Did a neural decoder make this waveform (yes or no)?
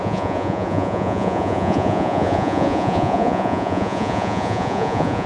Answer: yes